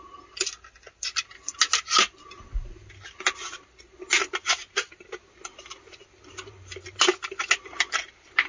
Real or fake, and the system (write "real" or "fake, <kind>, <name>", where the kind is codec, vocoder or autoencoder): real